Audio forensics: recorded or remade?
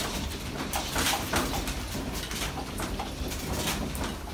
remade